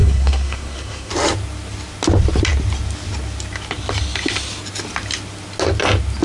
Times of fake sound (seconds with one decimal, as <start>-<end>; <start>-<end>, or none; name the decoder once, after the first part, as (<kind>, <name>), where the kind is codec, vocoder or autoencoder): 0.0-1.1 (codec, SNAC)